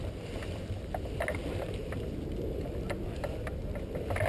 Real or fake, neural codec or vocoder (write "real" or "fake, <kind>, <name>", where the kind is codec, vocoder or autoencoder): real